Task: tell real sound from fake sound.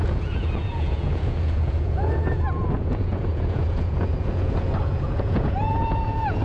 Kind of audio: fake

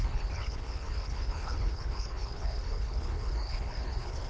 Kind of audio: fake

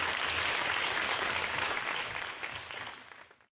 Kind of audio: real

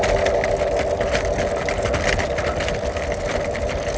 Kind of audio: real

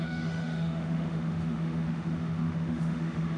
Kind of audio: fake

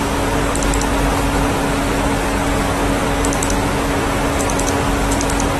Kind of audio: real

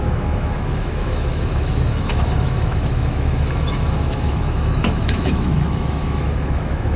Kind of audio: fake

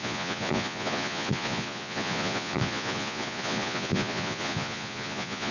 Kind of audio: fake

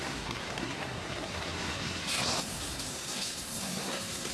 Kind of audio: fake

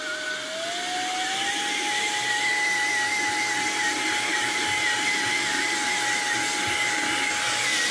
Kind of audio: real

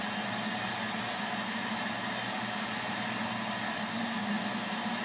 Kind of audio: real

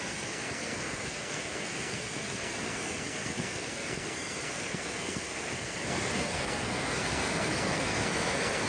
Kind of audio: fake